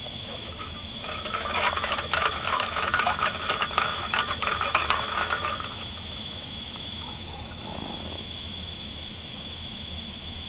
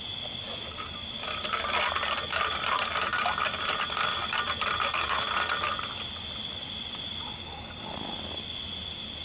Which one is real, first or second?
second